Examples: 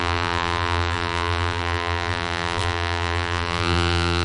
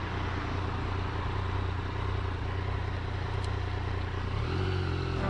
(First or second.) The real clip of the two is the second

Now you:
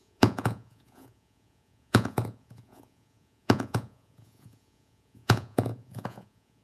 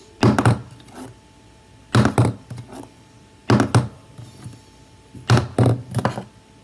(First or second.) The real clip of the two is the second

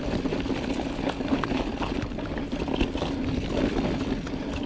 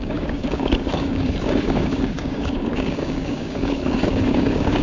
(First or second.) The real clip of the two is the first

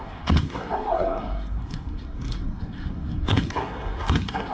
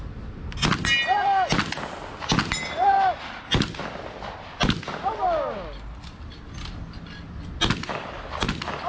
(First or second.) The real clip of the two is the second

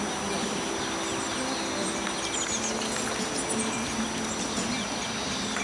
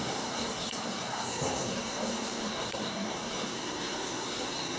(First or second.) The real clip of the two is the first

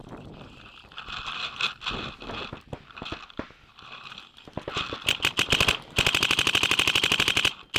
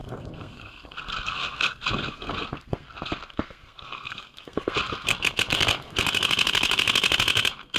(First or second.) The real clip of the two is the first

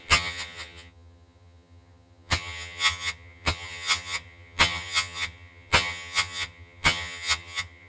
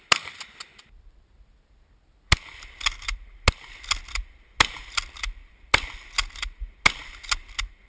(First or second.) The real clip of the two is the second